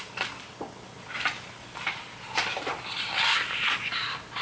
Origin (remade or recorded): recorded